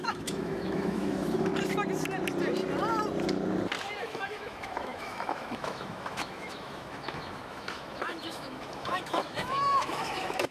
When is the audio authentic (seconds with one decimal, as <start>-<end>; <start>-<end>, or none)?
1.5-4.0